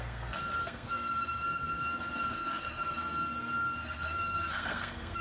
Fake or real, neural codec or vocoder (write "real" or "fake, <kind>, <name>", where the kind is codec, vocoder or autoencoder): fake, codec, SNAC